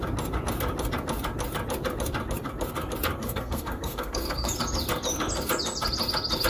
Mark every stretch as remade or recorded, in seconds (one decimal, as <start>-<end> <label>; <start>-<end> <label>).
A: 0.0-3.2 recorded; 3.2-4.5 remade; 4.5-6.5 recorded